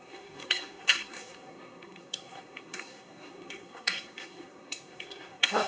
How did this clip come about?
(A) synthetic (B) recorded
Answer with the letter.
A